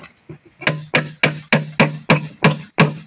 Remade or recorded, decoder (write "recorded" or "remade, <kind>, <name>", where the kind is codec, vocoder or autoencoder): recorded